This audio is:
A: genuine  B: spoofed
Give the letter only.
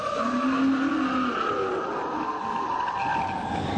A